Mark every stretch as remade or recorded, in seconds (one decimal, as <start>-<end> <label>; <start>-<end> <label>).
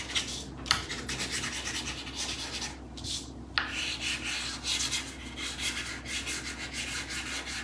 0.0-7.6 recorded